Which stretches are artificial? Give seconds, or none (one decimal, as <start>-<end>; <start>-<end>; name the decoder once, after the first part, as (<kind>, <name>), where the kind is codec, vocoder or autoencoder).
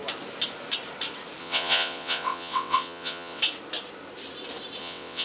1.4-3.4 (vocoder, WaveNeXt); 4.8-5.2